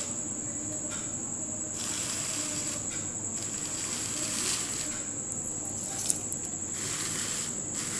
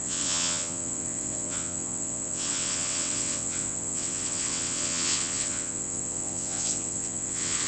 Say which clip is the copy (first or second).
second